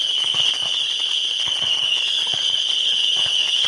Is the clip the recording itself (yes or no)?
no